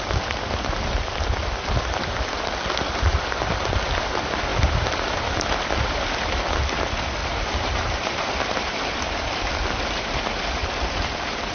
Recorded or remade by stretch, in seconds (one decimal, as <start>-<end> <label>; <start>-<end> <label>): 0.0-7.2 recorded; 7.2-9.4 remade; 9.4-10.6 recorded; 10.6-11.5 remade